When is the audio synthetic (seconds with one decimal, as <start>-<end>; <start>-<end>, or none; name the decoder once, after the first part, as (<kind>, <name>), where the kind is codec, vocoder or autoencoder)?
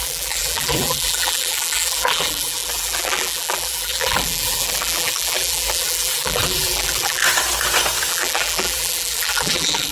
0.0-7.2 (vocoder, BigVGAN v2); 8.1-9.9